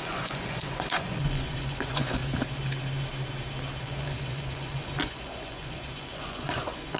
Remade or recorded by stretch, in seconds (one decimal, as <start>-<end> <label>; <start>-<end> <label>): 0.0-2.2 remade; 2.2-3.8 recorded; 3.8-7.0 remade